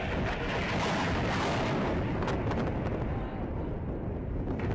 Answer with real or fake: real